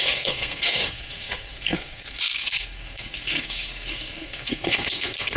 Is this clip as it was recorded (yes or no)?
no